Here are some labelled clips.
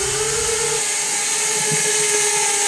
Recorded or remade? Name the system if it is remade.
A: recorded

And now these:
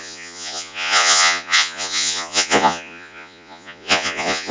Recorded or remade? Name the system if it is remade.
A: remade, vocoder, Vocos